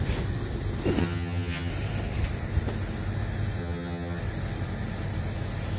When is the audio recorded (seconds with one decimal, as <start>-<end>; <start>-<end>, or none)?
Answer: 0.0-1.0; 1.7-3.6; 4.2-5.8